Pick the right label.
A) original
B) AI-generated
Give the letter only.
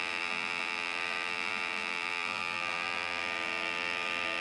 B